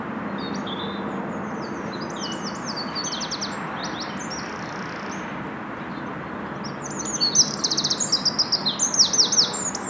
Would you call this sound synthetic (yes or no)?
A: no